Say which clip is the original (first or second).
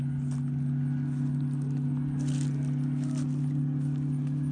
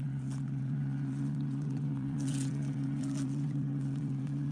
first